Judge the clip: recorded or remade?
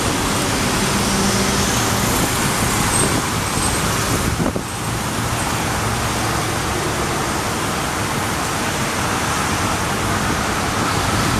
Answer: recorded